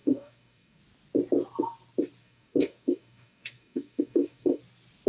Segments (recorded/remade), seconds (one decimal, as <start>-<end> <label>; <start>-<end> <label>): 0.0-0.8 remade; 0.8-2.2 recorded; 2.2-4.6 remade; 4.6-5.1 recorded